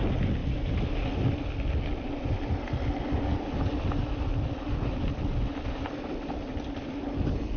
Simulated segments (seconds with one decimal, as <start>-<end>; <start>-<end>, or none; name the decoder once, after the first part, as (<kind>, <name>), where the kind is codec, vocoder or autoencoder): none